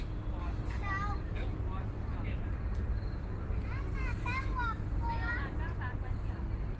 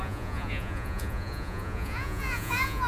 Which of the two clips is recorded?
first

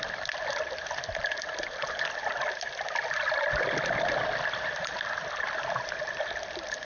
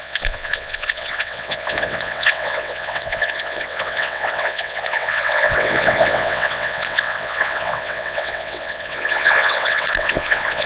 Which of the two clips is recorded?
first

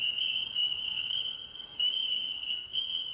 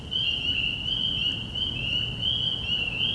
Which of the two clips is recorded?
second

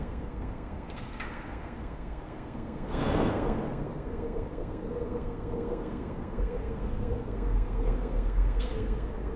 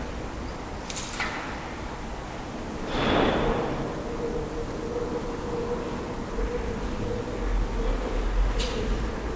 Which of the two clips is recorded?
second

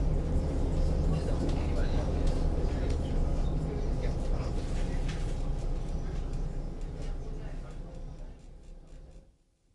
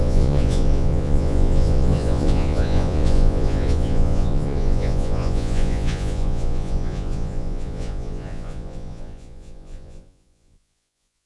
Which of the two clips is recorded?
first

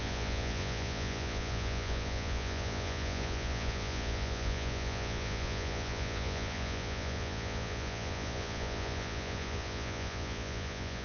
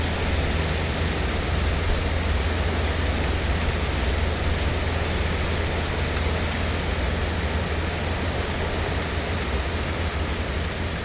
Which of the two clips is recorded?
second